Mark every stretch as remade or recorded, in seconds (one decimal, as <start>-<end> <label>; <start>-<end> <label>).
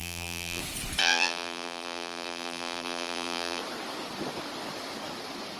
0.0-0.6 remade; 0.6-1.0 recorded; 1.0-3.6 remade; 3.6-5.6 recorded